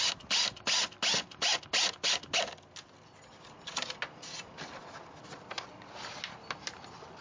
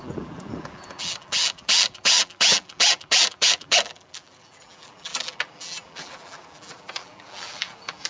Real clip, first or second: first